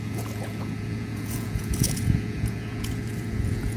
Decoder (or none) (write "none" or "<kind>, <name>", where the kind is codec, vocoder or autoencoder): vocoder, Vocos